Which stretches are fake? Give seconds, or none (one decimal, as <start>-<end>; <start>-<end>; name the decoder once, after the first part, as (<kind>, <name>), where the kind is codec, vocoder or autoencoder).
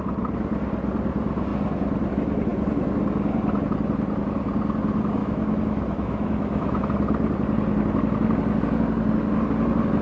5.2-6.8 (autoencoder, DAC-VAE)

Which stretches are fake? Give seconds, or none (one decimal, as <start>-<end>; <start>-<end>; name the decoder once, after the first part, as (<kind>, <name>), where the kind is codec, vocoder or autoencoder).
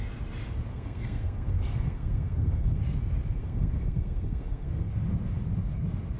0.7-2.8 (codec, SNAC); 3.4-4.9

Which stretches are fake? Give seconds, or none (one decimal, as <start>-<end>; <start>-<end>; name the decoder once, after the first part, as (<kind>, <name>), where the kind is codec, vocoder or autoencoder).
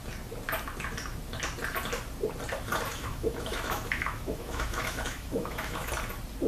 2.9-5.9 (autoencoder, DAC-VAE)